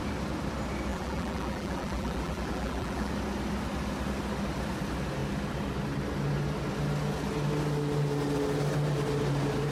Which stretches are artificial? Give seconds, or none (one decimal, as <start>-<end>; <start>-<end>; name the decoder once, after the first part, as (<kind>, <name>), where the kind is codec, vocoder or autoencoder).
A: 0.9-3.1 (vocoder, BigVGAN v2)